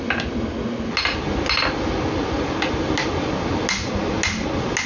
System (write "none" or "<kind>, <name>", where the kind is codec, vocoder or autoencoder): none